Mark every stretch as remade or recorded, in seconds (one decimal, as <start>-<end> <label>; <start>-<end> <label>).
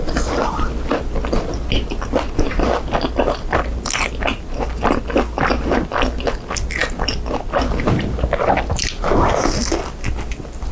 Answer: 0.0-10.7 recorded